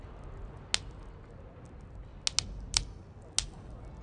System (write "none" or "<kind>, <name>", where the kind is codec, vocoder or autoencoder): none